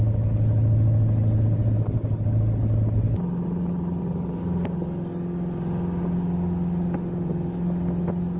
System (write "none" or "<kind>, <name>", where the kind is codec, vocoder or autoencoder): none